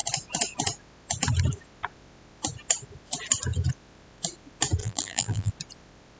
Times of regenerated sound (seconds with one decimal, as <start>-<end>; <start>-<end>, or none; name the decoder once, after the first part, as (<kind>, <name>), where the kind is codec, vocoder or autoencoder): 4.8-5.5 (vocoder, BigVGAN v2)